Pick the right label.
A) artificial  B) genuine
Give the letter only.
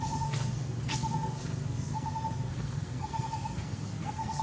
A